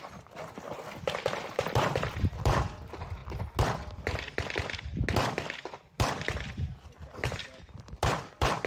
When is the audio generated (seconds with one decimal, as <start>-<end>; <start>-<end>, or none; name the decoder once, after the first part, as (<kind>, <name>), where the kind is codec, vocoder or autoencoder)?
0.0-3.2 (vocoder, BigVGAN v2); 5.8-8.7